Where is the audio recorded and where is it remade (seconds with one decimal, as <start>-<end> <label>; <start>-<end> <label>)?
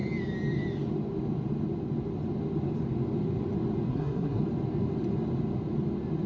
0.0-3.9 recorded; 3.9-4.4 remade; 4.4-6.3 recorded